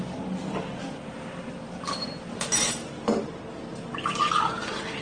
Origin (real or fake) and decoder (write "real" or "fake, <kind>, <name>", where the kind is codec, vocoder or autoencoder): real